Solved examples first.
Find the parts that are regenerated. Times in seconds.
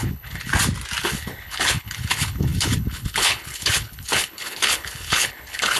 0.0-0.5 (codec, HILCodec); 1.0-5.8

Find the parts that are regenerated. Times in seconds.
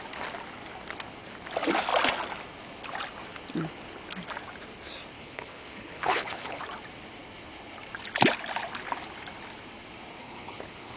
5.2-6.6 (codec, HILCodec); 10.2-11.0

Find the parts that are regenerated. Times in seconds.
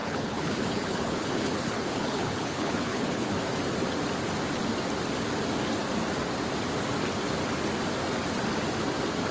0.0-3.4 (codec, HILCodec)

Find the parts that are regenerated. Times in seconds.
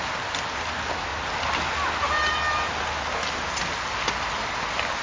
none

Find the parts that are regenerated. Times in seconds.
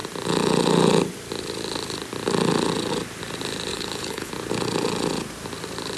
3.7-4.3 (codec, HILCodec)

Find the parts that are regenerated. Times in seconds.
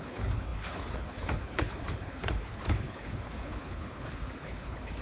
0.0-5.0 (codec, HILCodec)